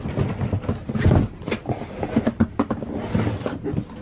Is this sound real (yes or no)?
yes